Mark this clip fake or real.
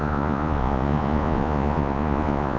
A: fake